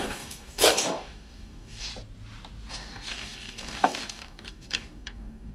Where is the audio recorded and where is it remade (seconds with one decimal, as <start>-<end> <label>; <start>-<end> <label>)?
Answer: 0.0-1.9 remade; 1.9-2.7 recorded; 2.7-5.5 remade